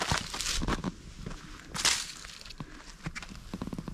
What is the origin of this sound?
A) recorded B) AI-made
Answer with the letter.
A